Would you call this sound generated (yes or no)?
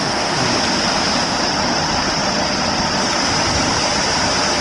no